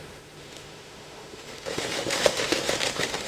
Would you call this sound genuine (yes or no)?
no